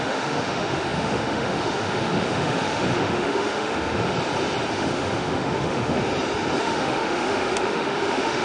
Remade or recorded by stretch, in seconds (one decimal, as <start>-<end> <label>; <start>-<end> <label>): 0.0-4.0 remade; 4.0-4.7 recorded; 4.7-6.0 remade; 6.0-6.6 recorded; 6.6-8.4 remade